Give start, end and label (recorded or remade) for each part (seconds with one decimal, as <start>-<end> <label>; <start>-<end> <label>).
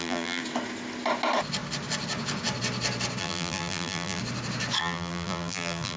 0.0-0.4 remade; 0.4-3.2 recorded; 3.2-4.2 remade; 4.2-4.8 recorded; 4.8-6.0 remade